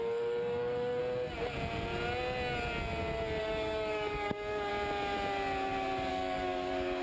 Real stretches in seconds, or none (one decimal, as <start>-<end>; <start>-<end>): 1.0-3.4; 4.7-6.1